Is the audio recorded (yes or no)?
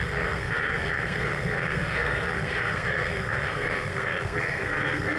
no